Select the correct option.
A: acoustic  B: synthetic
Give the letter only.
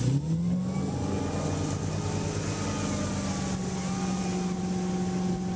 A